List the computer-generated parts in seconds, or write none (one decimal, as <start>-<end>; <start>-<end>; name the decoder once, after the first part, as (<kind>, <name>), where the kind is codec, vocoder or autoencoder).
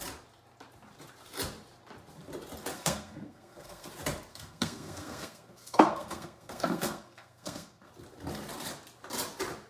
2.7-3.9 (codec, SNAC); 4.3-7.9